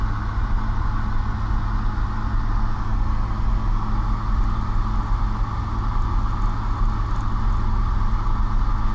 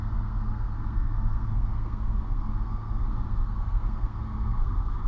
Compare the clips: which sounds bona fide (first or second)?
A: first